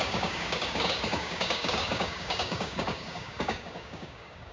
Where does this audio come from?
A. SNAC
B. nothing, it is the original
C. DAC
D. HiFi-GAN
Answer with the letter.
C